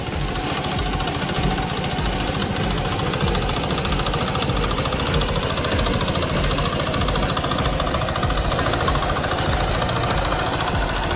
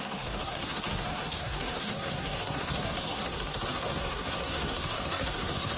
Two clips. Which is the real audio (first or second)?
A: first